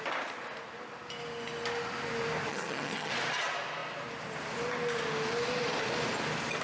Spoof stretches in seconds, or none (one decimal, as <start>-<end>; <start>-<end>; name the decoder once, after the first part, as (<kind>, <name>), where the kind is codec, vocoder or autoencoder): 2.5-3.1 (vocoder, HiFi-GAN)